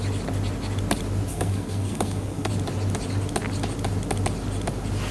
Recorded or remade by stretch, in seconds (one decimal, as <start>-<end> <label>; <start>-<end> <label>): 0.0-1.3 recorded; 1.3-2.5 remade; 2.5-5.1 recorded